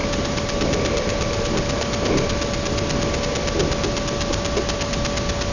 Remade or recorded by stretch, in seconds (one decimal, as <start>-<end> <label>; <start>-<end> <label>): 0.0-5.5 recorded